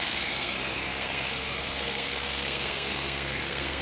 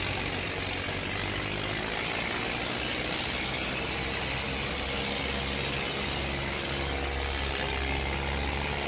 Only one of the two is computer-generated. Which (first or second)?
first